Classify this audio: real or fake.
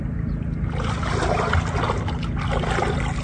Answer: real